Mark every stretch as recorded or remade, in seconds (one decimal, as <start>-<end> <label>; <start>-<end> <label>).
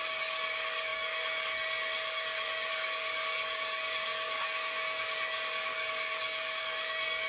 0.0-7.3 remade